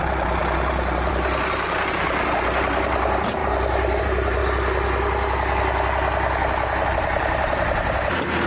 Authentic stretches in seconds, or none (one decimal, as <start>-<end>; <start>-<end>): 4.4-6.9